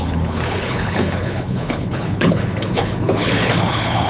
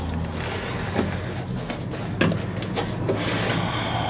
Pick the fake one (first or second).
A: first